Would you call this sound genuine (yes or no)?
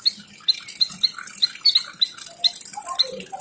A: yes